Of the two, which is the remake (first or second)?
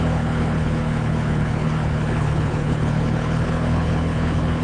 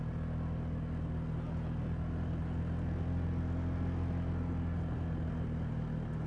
first